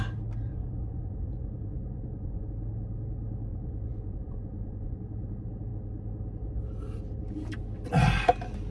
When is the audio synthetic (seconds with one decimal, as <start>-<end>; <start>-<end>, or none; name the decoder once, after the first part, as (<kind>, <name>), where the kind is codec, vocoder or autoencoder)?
0.5-2.5 (vocoder, Vocos); 3.5-5.0